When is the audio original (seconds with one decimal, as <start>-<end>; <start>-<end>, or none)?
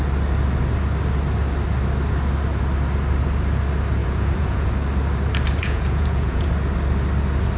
0.0-4.0; 4.7-5.6; 6.5-7.6